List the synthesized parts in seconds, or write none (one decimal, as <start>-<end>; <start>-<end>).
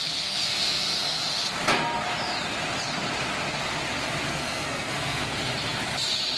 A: 0.0-1.2; 4.3-5.5